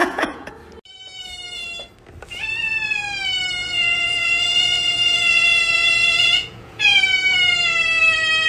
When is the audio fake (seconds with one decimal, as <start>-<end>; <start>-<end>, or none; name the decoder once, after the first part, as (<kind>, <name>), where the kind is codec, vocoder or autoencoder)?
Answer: 0.0-0.5 (vocoder, Vocos); 3.6-7.0